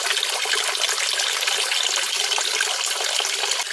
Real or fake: real